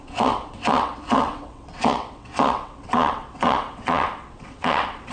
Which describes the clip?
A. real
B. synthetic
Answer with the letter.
B